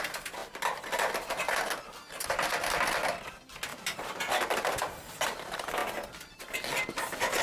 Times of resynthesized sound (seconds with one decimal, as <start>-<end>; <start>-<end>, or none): 3.7-5.1